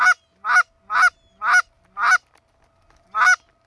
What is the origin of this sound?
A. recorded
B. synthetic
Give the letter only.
A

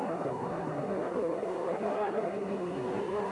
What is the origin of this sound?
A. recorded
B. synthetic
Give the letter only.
B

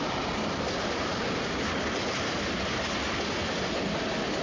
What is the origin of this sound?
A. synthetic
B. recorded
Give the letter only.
B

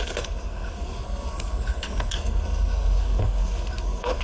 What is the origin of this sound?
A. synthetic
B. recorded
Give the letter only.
A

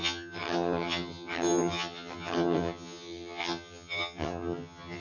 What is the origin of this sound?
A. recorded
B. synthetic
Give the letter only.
B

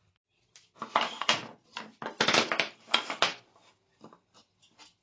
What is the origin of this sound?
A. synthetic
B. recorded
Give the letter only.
B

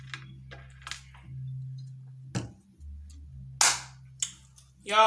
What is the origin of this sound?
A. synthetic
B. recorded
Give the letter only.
B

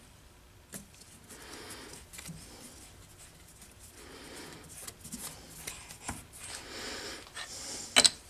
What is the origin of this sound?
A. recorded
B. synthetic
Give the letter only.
A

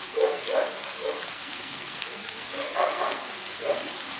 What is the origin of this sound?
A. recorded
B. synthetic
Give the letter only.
B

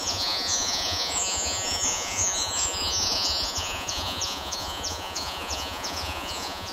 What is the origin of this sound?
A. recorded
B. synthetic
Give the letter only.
B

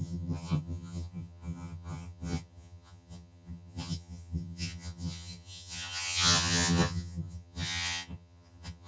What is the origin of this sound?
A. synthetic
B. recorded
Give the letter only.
A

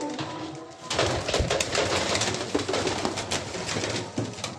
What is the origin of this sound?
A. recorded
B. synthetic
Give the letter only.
A